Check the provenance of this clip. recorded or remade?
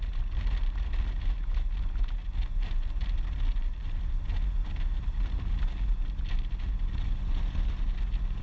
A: recorded